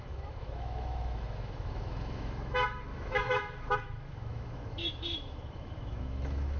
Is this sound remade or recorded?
remade